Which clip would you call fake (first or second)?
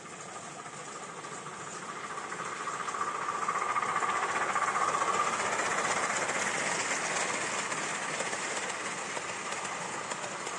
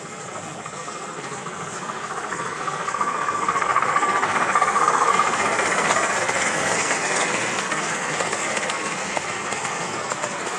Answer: second